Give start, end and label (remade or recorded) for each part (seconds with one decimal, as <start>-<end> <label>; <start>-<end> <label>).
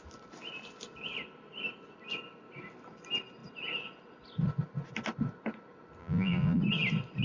0.0-6.0 recorded; 6.0-6.6 remade; 6.6-7.2 recorded